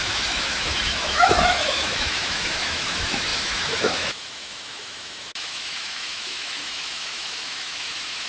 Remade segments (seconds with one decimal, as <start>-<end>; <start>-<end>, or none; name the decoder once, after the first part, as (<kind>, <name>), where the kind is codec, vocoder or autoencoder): 0.0-8.3 (autoencoder, DAC-VAE)